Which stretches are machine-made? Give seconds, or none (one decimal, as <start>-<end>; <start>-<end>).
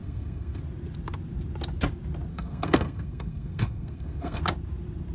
0.0-0.6; 2.3-4.4